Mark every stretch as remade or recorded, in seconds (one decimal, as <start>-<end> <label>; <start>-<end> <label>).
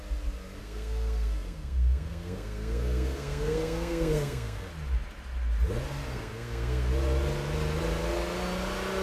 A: 0.0-0.6 recorded; 0.6-4.7 remade; 4.7-6.1 recorded; 6.1-6.9 remade; 6.9-9.0 recorded